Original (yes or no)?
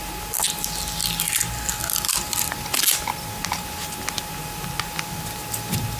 yes